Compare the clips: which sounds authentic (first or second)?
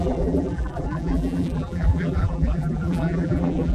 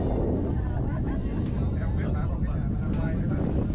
second